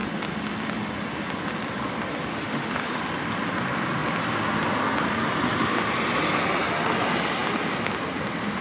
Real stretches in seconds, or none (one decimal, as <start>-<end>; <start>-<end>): 0.0-2.3; 3.0-8.6